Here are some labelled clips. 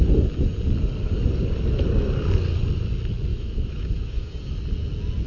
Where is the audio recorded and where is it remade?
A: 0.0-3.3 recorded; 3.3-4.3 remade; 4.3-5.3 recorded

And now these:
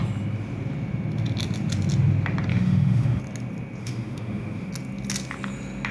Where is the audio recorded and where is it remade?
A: 0.0-2.5 recorded; 2.5-3.2 remade; 3.2-3.8 recorded; 3.8-4.7 remade; 4.7-5.9 recorded